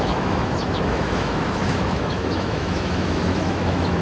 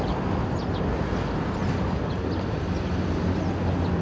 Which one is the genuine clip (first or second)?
second